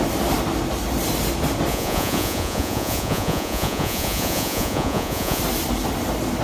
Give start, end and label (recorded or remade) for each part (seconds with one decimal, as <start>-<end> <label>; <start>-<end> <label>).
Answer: 0.0-1.7 recorded; 1.7-5.4 remade; 5.4-6.4 recorded